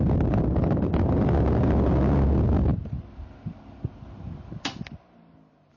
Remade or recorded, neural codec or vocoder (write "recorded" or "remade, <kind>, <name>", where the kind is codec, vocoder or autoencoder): recorded